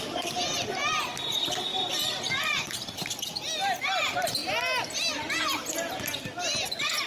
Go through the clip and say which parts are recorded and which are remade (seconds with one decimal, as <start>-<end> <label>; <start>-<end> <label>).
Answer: 0.0-7.1 recorded

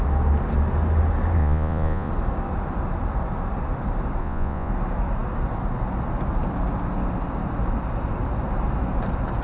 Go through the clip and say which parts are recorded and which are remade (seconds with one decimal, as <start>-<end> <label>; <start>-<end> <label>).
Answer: 0.0-1.4 recorded; 1.4-2.1 remade; 2.1-4.2 recorded; 4.2-4.7 remade; 4.7-9.4 recorded

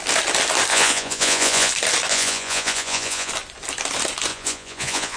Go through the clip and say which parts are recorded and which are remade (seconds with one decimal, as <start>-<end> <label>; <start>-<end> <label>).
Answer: 0.0-0.7 recorded; 0.7-1.7 remade; 1.7-2.1 recorded; 2.1-3.3 remade; 3.3-4.3 recorded; 4.3-5.2 remade

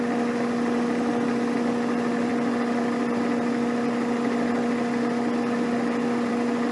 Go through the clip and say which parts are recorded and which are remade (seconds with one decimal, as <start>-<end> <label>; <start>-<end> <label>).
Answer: 0.0-6.7 recorded

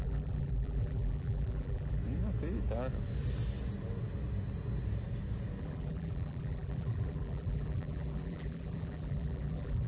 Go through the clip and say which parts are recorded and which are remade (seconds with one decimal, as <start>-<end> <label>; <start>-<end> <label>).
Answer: 0.0-2.0 remade; 2.0-5.6 recorded; 5.6-9.9 remade

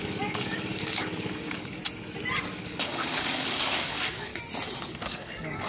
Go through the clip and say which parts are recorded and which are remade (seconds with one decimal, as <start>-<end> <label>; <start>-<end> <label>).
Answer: 0.0-1.8 remade; 1.8-2.6 recorded; 2.6-4.3 remade; 4.3-4.8 recorded; 4.8-5.7 remade

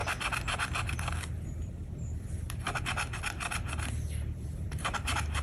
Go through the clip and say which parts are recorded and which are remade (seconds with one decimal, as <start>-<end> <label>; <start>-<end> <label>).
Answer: 0.0-5.4 remade

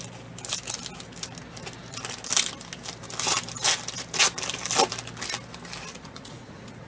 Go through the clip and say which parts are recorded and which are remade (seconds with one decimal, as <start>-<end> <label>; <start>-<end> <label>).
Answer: 0.0-5.9 recorded; 5.9-6.9 remade